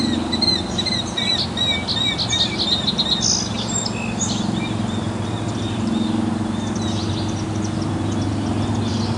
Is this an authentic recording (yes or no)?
yes